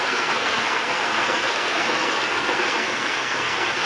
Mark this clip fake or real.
fake